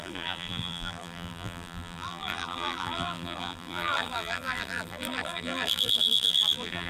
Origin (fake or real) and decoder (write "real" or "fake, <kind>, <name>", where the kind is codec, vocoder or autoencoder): fake, vocoder, BigVGAN v2